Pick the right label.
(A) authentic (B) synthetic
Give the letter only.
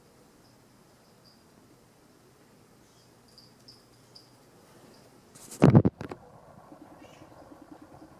A